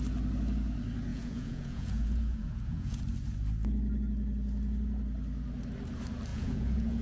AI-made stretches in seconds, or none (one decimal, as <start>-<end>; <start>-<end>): 1.1-3.0; 6.3-7.0